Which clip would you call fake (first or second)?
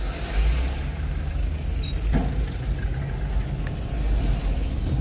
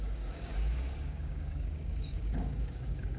second